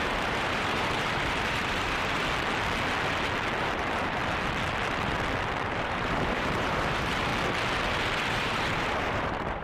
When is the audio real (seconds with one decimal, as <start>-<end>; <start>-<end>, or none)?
2.2-3.6; 4.2-5.7; 7.3-8.3

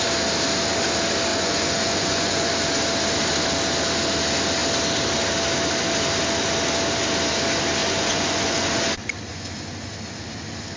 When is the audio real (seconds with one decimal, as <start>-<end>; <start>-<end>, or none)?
0.0-1.3; 2.5-7.8; 8.7-9.3; 9.9-10.8

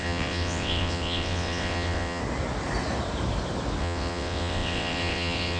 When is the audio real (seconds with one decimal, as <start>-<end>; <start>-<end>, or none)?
2.2-3.8

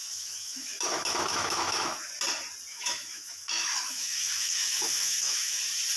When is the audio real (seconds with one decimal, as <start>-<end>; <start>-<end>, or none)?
2.1-2.7; 5.6-6.0

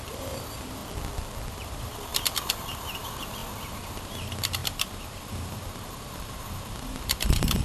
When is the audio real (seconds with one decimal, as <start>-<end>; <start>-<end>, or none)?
0.8-1.5

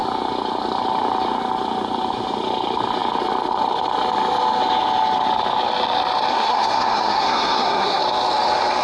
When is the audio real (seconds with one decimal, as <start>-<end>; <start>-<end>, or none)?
0.0-6.3; 8.0-8.8

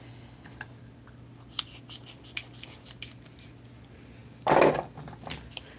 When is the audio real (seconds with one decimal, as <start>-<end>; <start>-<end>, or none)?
0.0-5.8

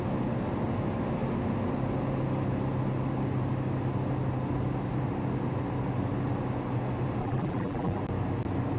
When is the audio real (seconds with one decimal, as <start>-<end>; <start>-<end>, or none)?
0.0-7.2; 8.0-8.8